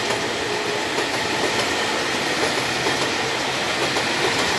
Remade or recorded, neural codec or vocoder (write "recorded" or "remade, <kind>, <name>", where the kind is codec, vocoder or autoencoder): recorded